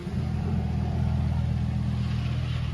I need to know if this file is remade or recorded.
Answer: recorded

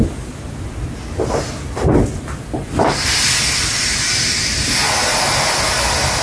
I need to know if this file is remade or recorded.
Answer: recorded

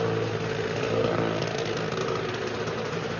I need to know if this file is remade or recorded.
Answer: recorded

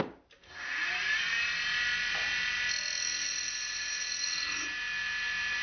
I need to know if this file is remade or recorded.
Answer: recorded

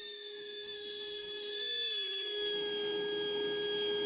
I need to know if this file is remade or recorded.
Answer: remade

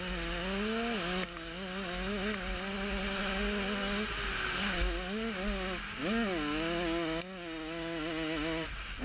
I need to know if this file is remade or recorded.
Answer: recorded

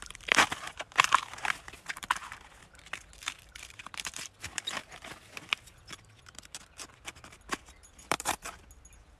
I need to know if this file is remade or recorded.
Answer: remade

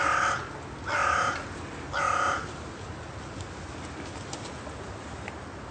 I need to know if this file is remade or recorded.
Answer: recorded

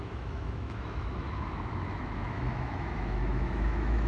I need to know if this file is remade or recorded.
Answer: remade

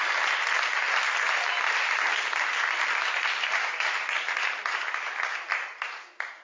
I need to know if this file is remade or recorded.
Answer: recorded